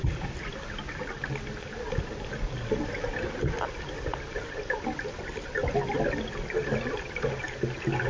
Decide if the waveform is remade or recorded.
recorded